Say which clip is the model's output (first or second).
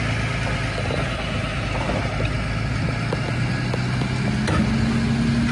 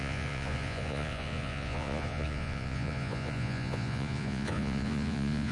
second